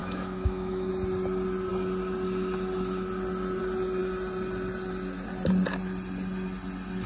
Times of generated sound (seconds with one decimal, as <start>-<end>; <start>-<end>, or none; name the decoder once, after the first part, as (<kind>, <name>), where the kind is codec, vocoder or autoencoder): 0.0-0.9 (autoencoder, DAC-VAE)